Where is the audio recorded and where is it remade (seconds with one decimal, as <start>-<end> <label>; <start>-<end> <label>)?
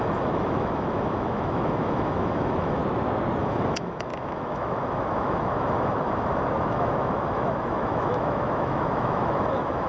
0.0-2.8 remade; 2.8-3.4 recorded; 3.4-9.9 remade